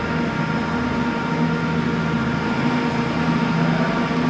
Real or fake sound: real